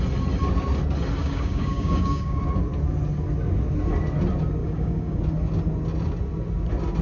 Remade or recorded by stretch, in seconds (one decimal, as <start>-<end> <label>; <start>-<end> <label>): 0.0-1.2 recorded; 1.2-2.4 remade; 2.4-4.6 recorded; 4.6-5.2 remade; 5.2-7.0 recorded